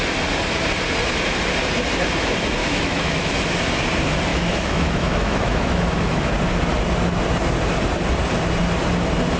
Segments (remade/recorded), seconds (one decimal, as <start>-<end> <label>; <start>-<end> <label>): 0.0-2.6 recorded; 2.6-3.3 remade; 3.3-4.3 recorded; 4.3-6.3 remade; 6.3-9.4 recorded